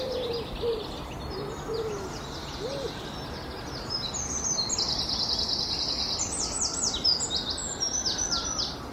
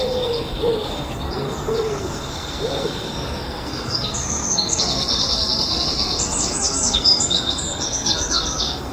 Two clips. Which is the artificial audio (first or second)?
second